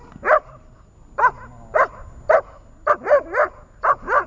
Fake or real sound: real